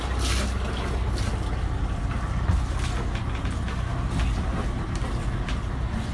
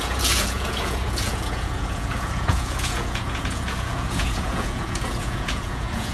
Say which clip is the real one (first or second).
first